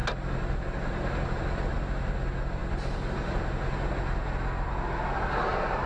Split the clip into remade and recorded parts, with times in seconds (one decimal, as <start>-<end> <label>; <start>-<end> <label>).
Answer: 0.0-5.9 recorded